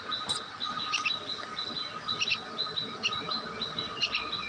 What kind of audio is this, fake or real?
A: real